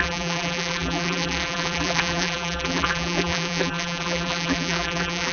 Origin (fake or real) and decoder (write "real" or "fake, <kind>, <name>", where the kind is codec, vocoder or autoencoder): fake, vocoder, BigVGAN v2